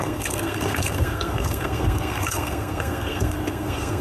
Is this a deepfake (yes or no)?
yes